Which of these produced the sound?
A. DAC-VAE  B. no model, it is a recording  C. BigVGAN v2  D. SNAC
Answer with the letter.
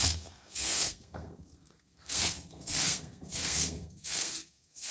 D